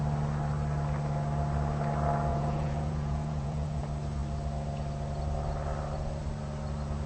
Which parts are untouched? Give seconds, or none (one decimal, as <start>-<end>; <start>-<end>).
0.0-2.3; 3.8-7.1